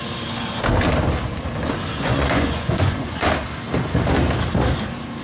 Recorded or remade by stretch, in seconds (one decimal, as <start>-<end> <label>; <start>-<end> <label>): 0.0-1.9 recorded; 1.9-3.3 remade; 3.3-5.2 recorded